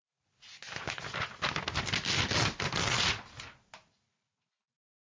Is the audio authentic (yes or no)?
yes